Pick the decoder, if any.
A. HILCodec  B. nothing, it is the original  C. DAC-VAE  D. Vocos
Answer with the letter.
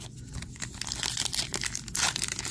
B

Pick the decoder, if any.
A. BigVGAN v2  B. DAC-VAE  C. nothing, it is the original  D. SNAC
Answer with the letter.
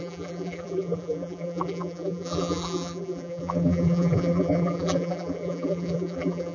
A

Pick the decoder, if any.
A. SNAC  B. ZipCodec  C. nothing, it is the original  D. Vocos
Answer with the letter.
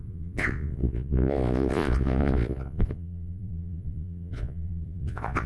D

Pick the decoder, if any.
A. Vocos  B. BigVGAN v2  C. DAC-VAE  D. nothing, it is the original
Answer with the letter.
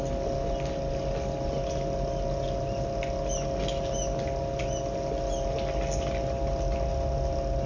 D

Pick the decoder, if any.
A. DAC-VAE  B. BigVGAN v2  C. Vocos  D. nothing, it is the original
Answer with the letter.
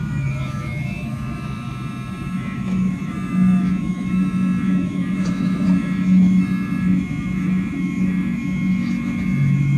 A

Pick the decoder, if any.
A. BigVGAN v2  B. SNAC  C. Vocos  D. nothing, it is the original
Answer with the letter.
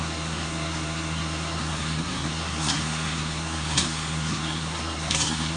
B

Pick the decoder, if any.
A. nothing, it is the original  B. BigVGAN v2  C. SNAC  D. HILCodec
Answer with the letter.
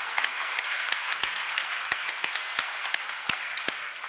C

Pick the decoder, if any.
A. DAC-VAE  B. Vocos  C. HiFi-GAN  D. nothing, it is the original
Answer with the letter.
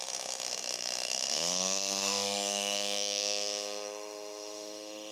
A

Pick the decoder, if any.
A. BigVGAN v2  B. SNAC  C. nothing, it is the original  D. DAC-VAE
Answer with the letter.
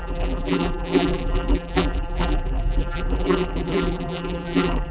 A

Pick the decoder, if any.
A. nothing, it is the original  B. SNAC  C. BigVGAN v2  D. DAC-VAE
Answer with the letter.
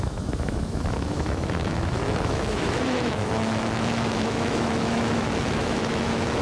D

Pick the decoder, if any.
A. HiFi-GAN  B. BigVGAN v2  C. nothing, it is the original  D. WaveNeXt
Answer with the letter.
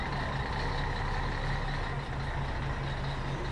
C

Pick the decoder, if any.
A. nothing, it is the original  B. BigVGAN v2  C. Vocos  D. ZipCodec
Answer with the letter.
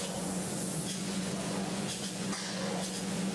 C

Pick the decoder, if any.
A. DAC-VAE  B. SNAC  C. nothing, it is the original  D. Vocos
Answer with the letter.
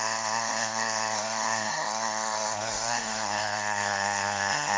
B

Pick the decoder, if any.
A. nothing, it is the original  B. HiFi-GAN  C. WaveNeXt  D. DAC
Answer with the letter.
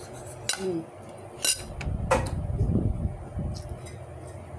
A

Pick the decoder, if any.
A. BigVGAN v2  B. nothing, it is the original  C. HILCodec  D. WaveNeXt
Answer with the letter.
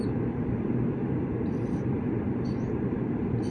A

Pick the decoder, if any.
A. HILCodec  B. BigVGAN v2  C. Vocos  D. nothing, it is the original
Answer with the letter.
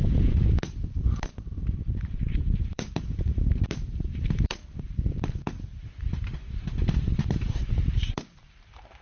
B